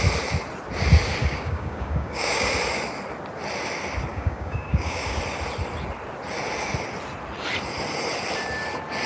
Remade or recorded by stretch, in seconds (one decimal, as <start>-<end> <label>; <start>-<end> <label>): 0.0-1.2 recorded; 1.2-2.5 remade; 2.5-4.1 recorded; 4.1-5.2 remade; 5.2-9.1 recorded

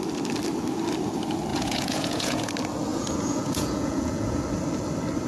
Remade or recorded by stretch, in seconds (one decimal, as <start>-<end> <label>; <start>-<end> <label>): 0.0-1.5 recorded; 1.5-2.5 remade; 2.5-2.9 recorded; 2.9-4.4 remade; 4.4-5.3 recorded

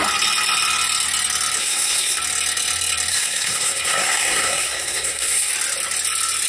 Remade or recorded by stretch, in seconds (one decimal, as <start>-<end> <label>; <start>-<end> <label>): 0.0-1.6 recorded; 1.6-2.2 remade; 2.2-3.1 recorded; 3.1-5.5 remade; 5.5-6.5 recorded

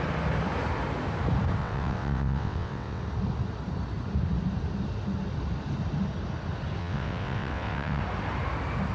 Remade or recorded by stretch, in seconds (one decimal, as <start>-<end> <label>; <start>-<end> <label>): 0.0-1.6 recorded; 1.6-3.0 remade; 3.0-6.8 recorded; 6.8-8.0 remade; 8.0-8.9 recorded

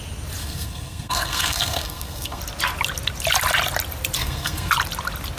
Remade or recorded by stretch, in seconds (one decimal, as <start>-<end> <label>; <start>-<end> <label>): 0.0-0.4 recorded; 0.4-2.4 remade; 2.4-4.2 recorded; 4.2-4.7 remade; 4.7-5.4 recorded

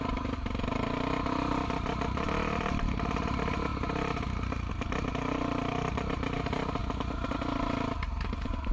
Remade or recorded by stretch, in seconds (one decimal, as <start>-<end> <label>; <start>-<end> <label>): 0.0-6.8 remade; 6.8-8.0 recorded; 8.0-8.7 remade

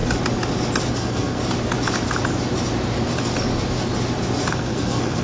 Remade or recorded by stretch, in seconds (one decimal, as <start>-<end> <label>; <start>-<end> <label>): 0.0-0.9 recorded; 0.9-1.4 remade; 1.4-4.5 recorded; 4.5-5.2 remade